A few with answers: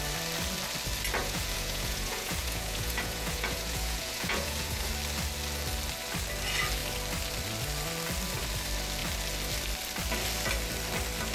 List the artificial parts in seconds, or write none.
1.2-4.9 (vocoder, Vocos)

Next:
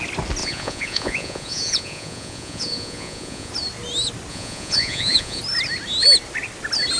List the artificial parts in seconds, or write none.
0.4-3.5 (vocoder, Vocos); 4.3-5.4

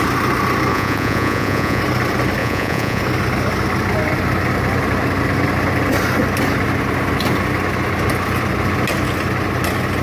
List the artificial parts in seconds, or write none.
0.7-1.8 (vocoder, Vocos); 2.4-3.0

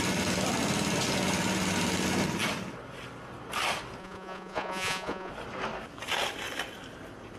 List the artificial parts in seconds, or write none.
4.0-5.3 (vocoder, Vocos)

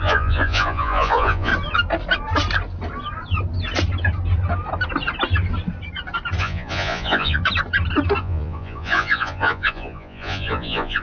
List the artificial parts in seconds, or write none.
0.0-1.5 (vocoder, Vocos); 6.4-7.4; 8.2-11.0

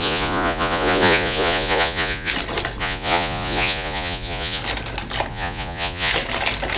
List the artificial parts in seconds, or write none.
0.0-2.3 (vocoder, Vocos); 2.8-4.6; 5.3-6.1

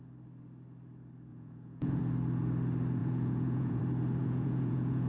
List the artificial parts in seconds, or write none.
1.3-2.0 (vocoder, Vocos); 3.0-3.8; 4.2-5.1